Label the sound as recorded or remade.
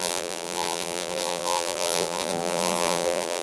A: remade